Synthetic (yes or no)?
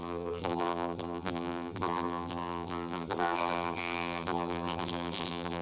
yes